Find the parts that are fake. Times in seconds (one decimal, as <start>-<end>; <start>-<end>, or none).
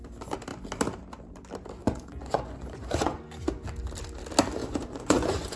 1.8-3.2; 4.6-5.6